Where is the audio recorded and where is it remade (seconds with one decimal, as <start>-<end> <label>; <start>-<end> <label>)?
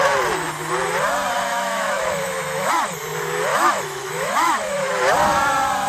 0.0-1.5 recorded; 1.5-2.7 remade; 2.7-3.5 recorded; 3.5-5.0 remade; 5.0-5.9 recorded